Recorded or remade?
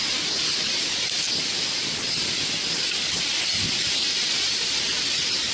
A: recorded